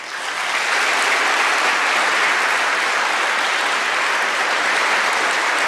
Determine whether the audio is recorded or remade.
remade